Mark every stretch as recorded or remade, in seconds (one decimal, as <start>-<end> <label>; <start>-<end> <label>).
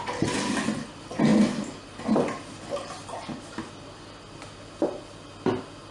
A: 0.0-5.9 recorded